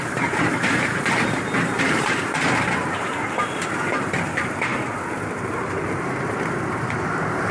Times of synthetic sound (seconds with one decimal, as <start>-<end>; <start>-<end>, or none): 0.0-4.7; 5.3-7.5